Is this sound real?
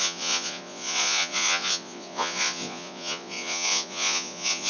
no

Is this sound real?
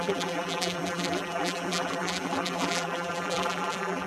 no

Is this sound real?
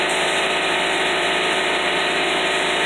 yes